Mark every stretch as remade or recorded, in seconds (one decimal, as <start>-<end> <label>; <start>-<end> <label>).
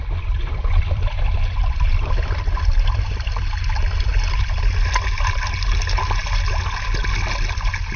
0.0-3.3 remade; 3.3-8.0 recorded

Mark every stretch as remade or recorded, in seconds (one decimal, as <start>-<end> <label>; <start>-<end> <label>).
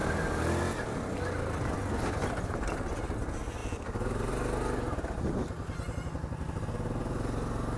0.0-7.8 recorded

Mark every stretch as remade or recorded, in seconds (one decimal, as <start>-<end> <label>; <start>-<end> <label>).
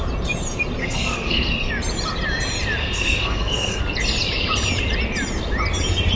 0.0-0.8 recorded; 0.8-1.7 remade; 1.7-2.8 recorded; 2.8-3.8 remade; 3.8-6.2 recorded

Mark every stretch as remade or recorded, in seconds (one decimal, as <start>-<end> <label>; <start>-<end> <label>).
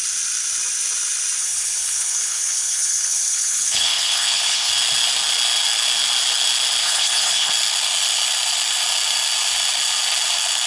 0.0-1.4 recorded; 1.4-4.7 remade; 4.7-6.8 recorded; 6.8-7.5 remade; 7.5-10.7 recorded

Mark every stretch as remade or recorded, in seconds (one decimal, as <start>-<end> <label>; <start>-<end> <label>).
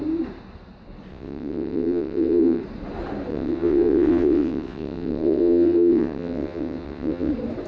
0.0-1.1 recorded; 1.1-2.6 remade; 2.6-3.3 recorded; 3.3-7.3 remade; 7.3-7.7 recorded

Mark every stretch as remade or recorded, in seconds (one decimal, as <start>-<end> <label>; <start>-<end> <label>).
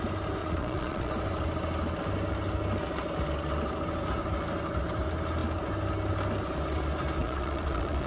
0.0-0.4 recorded; 0.4-1.1 remade; 1.1-7.2 recorded; 7.2-8.1 remade